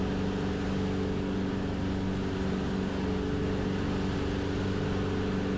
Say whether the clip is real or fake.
real